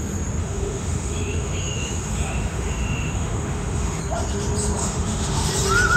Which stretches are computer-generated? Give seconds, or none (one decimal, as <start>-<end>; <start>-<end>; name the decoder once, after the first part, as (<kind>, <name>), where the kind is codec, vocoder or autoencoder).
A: 0.4-4.0 (autoencoder, DAC-VAE); 4.8-5.5